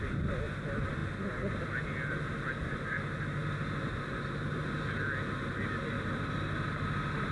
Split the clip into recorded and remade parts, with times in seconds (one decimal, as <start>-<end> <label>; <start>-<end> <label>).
0.0-7.3 recorded